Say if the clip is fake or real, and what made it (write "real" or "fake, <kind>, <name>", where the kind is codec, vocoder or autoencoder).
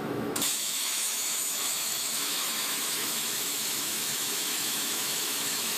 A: fake, autoencoder, DAC-VAE